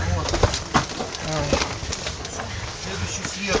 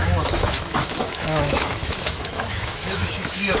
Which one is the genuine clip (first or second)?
first